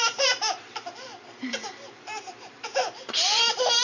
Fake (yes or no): yes